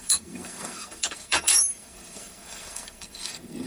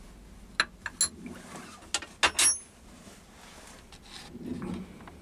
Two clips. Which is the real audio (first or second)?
second